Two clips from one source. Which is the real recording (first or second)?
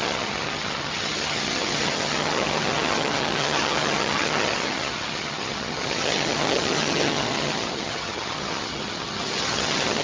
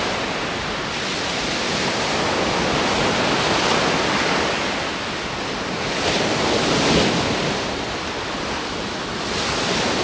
second